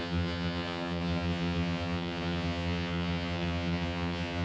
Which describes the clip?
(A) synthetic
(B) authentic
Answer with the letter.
A